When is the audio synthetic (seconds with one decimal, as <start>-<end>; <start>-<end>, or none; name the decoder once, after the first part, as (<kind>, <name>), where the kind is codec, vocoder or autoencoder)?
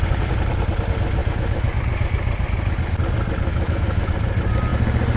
1.2-1.8 (autoencoder, DAC-VAE); 3.5-4.1